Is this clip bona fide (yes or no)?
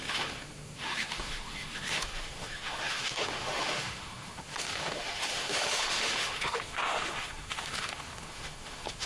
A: no